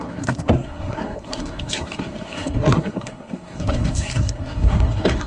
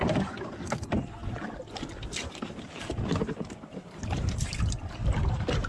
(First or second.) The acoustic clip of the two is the second